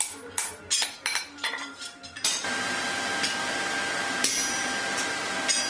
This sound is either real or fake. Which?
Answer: real